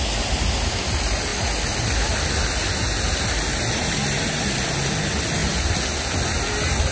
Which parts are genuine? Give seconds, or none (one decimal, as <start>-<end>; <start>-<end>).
0.0-6.9